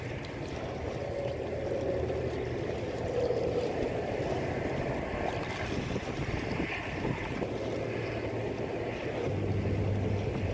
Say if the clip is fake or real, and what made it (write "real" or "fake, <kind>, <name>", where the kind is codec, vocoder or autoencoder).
real